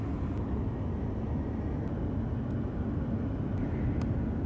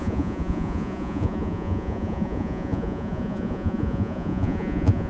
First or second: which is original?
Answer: first